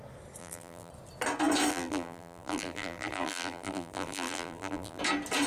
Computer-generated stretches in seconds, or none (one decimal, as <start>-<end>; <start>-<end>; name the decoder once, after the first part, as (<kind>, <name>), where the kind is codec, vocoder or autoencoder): 0.4-0.9 (vocoder, BigVGAN v2); 1.7-5.0